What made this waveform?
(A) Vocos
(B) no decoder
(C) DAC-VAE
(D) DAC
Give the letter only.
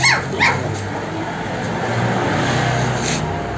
B